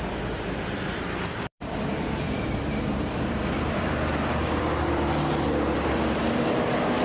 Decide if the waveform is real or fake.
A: fake